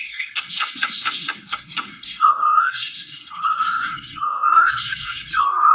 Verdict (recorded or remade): remade